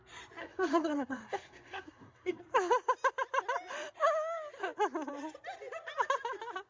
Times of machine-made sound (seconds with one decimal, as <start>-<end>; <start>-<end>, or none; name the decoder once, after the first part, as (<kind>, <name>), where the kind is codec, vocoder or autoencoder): 0.4-2.4 (codec, SNAC)